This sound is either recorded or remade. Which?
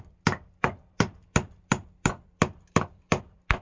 recorded